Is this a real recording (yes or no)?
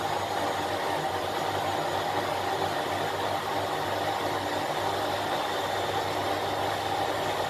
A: yes